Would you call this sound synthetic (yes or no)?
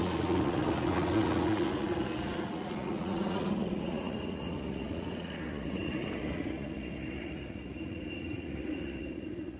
yes